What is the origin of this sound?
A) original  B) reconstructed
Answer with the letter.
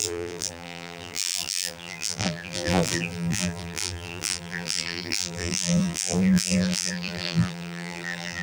B